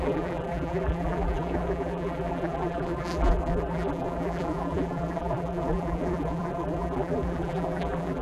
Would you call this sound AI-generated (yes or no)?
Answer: yes